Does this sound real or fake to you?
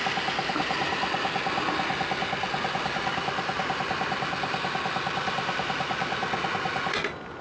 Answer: real